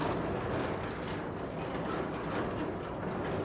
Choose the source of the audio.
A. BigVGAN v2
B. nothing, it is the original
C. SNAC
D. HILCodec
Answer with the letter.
B